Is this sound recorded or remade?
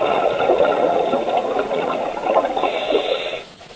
remade